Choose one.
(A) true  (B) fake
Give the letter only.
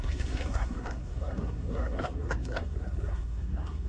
B